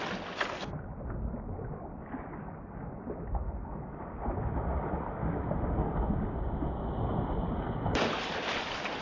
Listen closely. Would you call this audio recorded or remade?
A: recorded